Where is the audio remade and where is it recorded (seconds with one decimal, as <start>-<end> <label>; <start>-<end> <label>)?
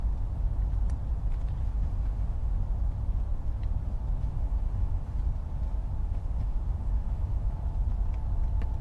0.0-1.6 recorded; 1.6-2.5 remade; 2.5-4.2 recorded; 4.2-5.2 remade; 5.2-6.0 recorded; 6.0-7.5 remade; 7.5-8.8 recorded